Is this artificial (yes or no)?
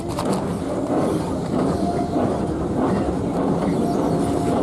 no